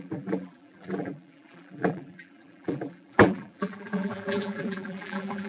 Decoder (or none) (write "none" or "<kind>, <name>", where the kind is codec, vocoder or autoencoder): vocoder, BigVGAN v2